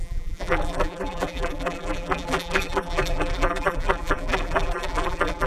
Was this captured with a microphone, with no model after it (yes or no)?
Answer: no